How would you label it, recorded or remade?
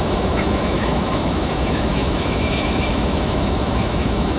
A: remade